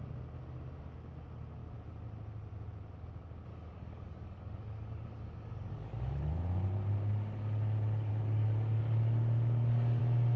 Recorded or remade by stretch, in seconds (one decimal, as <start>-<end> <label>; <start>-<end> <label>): 0.0-3.5 recorded; 3.5-6.3 remade; 6.3-8.1 recorded; 8.1-10.0 remade; 10.0-10.4 recorded